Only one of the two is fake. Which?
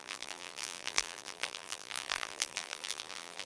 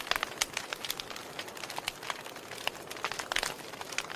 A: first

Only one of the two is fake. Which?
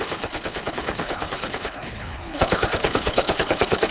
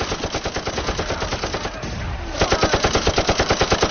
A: first